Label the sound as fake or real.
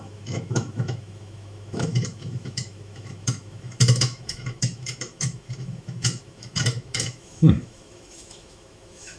fake